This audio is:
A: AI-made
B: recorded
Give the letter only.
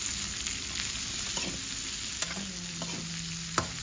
B